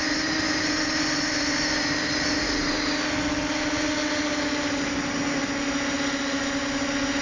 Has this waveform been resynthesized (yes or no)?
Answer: no